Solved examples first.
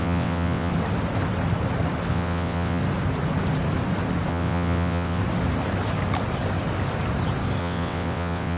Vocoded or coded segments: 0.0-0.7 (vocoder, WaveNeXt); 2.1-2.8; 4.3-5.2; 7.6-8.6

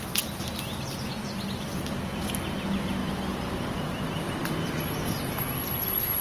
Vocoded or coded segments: 3.0-4.9 (vocoder, BigVGAN v2)

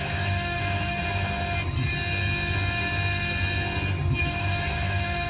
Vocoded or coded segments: 0.0-1.0 (autoencoder, DAC-VAE); 4.2-5.3

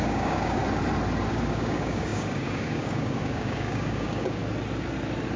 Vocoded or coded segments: 0.0-0.6 (codec, DAC); 1.3-4.4

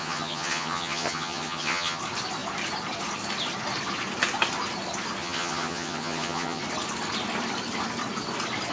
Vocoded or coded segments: 0.0-2.0 (vocoder, HiFi-GAN); 5.2-6.6

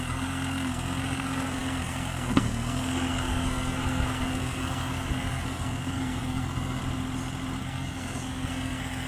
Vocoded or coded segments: 0.0-6.8 (codec, SNAC); 7.6-9.1

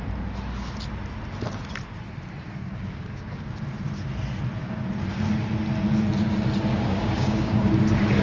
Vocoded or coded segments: 2.6-3.5 (codec, DAC); 4.6-5.2; 6.7-7.7